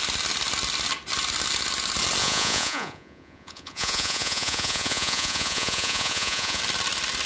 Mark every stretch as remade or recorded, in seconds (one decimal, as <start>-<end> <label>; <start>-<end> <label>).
0.0-2.2 recorded; 2.2-6.6 remade; 6.6-7.3 recorded